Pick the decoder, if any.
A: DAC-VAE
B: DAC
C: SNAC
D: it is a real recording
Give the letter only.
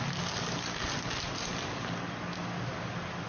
D